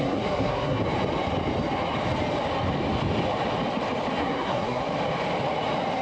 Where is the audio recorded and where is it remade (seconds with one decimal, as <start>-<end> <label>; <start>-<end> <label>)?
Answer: 0.0-0.8 remade; 0.8-4.2 recorded; 4.2-4.8 remade; 4.8-6.0 recorded